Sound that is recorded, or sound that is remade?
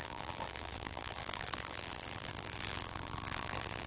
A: remade